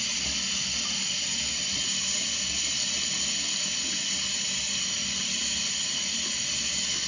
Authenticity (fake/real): real